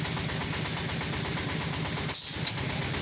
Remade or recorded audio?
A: recorded